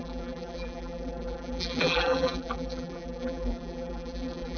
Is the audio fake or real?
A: fake